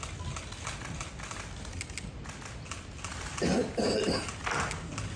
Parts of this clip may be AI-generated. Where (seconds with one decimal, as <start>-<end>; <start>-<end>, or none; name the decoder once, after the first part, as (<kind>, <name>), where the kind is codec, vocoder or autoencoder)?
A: none